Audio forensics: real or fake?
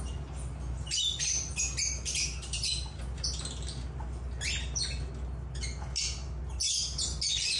real